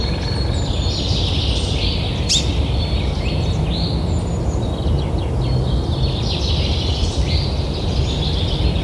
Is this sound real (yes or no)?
yes